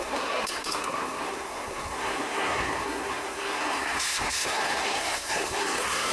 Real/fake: fake